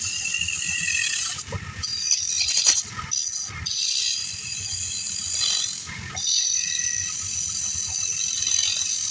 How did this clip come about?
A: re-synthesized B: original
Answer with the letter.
B